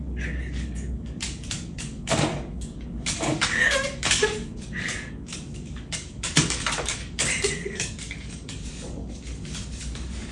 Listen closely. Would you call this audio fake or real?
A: fake